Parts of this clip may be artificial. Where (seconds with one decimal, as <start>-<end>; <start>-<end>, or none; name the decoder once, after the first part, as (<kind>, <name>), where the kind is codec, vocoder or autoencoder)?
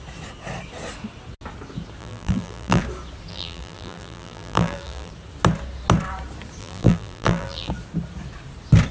2.0-2.8 (vocoder, BigVGAN v2); 3.3-5.1; 6.6-7.7